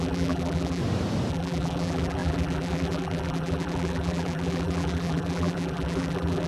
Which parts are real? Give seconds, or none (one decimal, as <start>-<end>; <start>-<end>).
0.8-1.3